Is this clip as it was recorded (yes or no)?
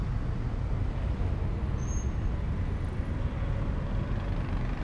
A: yes